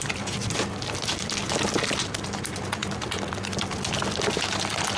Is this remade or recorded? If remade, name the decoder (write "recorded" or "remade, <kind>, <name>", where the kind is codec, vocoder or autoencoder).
recorded